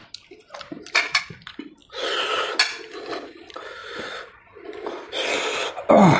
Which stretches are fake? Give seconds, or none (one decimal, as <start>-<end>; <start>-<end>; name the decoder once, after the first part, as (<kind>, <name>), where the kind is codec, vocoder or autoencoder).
1.8-2.5 (vocoder, BigVGAN v2)